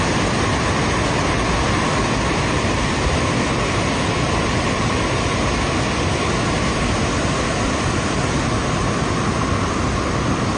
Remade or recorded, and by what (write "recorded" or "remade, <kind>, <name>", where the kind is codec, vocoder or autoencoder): recorded